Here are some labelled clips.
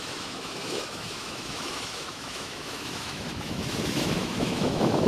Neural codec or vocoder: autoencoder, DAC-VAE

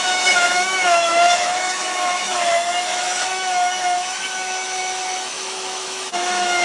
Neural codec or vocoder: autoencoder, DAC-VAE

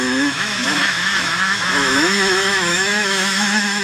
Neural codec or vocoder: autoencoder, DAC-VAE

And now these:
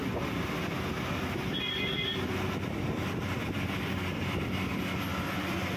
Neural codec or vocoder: none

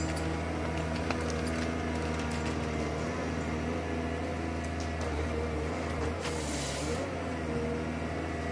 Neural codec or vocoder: none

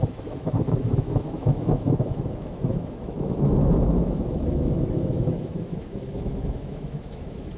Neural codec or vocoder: autoencoder, DAC-VAE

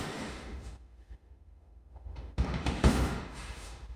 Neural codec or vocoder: autoencoder, DAC-VAE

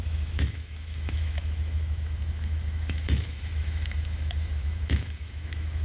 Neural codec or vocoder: autoencoder, DAC-VAE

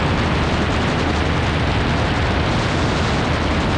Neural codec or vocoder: none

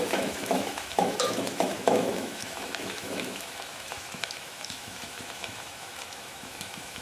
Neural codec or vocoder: autoencoder, DAC-VAE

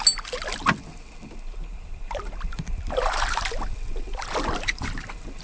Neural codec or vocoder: none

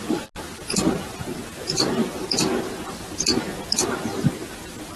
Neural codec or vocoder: none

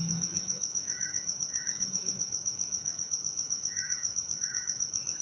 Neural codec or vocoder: autoencoder, DAC-VAE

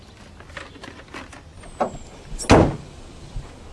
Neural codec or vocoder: none